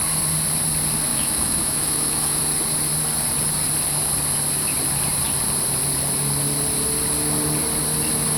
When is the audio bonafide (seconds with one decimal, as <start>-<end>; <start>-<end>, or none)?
0.0-1.1; 2.4-8.4